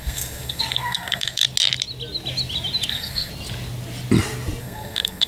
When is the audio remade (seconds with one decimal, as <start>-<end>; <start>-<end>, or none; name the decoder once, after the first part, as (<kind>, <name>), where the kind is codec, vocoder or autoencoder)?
0.0-1.4 (codec, SNAC); 2.9-3.3; 4.6-5.3